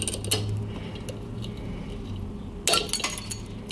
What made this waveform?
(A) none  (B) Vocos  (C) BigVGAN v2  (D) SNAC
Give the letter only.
A